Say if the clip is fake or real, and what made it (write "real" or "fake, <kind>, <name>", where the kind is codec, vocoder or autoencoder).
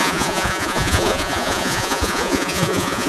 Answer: fake, vocoder, Vocos